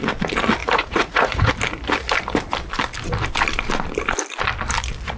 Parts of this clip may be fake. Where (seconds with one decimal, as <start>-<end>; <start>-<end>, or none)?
0.6-1.5